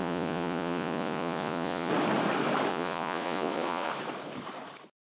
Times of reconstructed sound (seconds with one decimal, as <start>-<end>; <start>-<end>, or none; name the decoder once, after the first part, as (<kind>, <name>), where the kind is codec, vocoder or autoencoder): 0.0-1.9 (vocoder, Vocos); 2.7-3.9